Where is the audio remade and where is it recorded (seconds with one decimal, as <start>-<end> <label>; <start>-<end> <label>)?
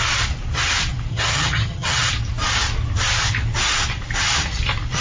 0.0-1.1 recorded; 1.1-2.1 remade; 2.1-5.0 recorded